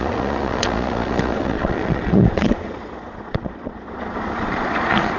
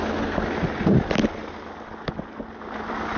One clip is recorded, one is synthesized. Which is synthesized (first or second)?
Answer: first